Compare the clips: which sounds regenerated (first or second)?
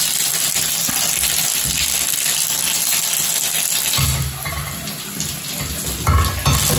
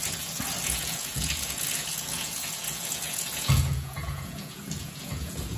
second